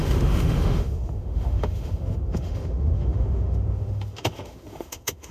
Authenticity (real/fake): fake